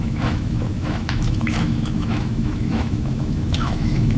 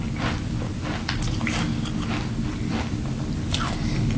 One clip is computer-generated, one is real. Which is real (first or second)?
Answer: second